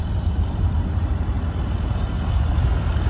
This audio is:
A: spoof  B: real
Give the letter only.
B